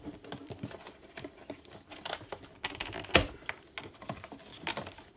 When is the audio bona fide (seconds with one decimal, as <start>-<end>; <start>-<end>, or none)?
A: 0.0-5.2

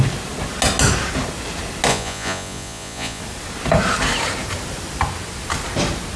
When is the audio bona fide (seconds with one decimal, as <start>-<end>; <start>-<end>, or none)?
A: 0.0-1.9; 3.2-6.2

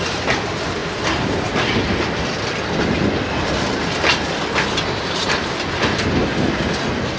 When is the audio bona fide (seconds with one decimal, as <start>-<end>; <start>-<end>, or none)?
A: 0.0-7.2